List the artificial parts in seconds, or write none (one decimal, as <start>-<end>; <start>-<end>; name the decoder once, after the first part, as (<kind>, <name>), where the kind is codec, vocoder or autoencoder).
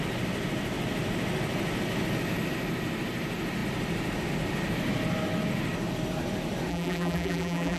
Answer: 6.7-7.8 (vocoder, BigVGAN v2)